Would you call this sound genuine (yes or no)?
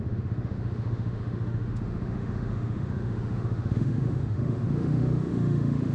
no